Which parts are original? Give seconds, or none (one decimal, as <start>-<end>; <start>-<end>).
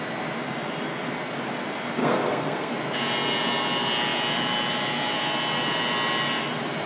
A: 0.0-2.0; 2.7-6.9